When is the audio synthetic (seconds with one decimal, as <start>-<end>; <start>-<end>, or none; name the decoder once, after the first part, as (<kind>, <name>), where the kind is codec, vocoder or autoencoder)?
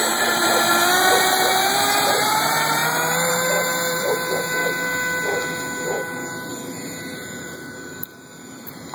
0.0-2.8 (vocoder, BigVGAN v2); 3.3-4.6; 6.5-8.9